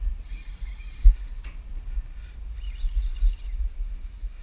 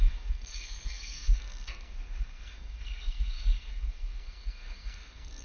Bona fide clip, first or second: first